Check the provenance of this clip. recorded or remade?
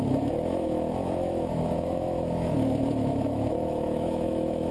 remade